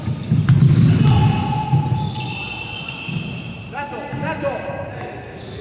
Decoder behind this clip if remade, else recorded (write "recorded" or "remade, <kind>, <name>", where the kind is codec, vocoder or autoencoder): recorded